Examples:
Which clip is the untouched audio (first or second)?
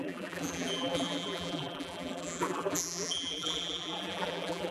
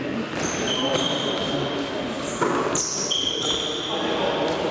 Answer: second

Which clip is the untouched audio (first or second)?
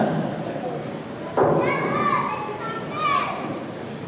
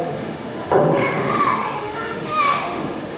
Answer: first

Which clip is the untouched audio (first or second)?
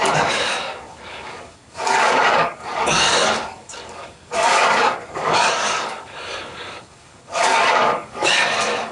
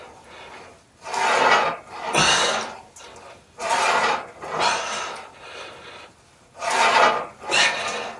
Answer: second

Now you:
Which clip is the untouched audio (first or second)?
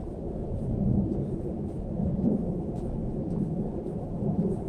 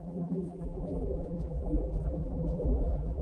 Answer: first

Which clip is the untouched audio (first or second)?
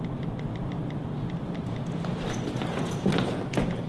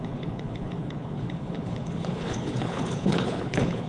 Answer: first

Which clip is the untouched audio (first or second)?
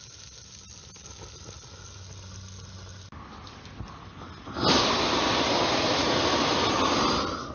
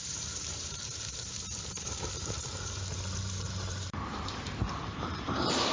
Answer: first